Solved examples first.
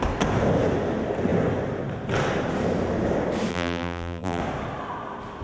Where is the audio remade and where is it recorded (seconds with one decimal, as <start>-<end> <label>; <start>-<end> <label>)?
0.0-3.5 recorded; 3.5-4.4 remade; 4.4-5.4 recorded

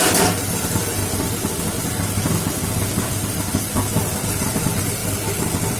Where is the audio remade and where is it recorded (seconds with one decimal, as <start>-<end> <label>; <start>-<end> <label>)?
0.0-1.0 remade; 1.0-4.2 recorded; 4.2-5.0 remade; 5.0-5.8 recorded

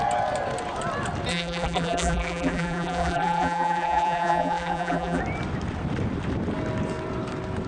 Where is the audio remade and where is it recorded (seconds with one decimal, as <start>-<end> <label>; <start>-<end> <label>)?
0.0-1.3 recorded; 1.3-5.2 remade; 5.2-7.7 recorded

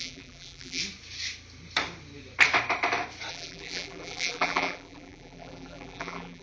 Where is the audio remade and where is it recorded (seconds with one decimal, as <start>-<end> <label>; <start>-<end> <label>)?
0.0-0.8 remade; 0.8-3.3 recorded; 3.3-6.4 remade

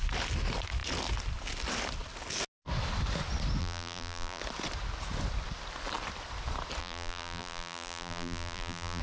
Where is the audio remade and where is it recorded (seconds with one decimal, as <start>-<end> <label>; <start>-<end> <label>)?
0.0-3.6 recorded; 3.6-4.4 remade; 4.4-6.8 recorded; 6.8-9.0 remade

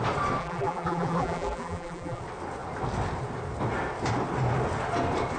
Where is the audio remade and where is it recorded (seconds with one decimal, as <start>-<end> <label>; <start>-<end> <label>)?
0.0-0.4 recorded; 0.4-2.2 remade; 2.2-5.4 recorded

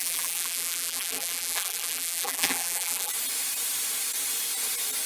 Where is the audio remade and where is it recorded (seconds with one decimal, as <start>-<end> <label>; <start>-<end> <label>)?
0.0-3.1 remade; 3.1-5.1 recorded